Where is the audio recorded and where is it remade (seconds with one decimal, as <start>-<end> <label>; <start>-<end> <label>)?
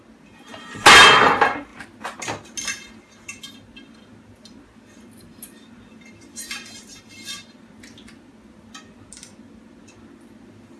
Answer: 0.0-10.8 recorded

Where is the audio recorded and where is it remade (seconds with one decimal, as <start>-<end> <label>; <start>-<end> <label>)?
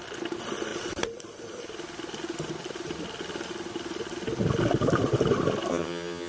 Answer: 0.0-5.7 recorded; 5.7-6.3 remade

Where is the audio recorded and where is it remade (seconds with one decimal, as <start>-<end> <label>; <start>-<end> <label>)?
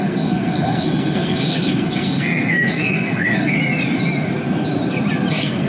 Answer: 0.0-3.6 remade; 3.6-5.3 recorded; 5.3-5.7 remade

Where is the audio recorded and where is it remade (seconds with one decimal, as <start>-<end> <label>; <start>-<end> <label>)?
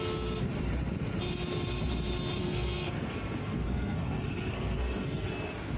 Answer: 0.0-2.4 recorded; 2.4-5.3 remade; 5.3-5.8 recorded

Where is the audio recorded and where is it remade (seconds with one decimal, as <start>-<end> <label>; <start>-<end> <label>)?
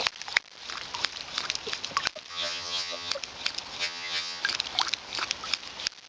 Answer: 0.0-2.3 recorded; 2.3-3.1 remade; 3.1-3.8 recorded; 3.8-4.4 remade; 4.4-6.1 recorded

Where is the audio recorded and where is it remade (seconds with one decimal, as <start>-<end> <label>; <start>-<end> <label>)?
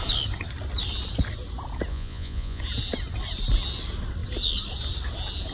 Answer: 0.0-1.9 recorded; 1.9-2.6 remade; 2.6-5.5 recorded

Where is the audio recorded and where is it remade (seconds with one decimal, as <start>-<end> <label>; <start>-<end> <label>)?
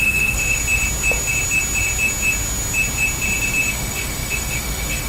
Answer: 0.0-0.6 remade; 0.6-3.7 recorded; 3.7-5.1 remade